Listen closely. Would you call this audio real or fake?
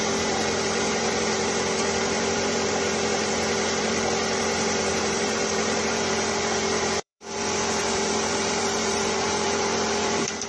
fake